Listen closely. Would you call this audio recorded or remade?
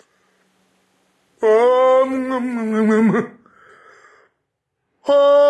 recorded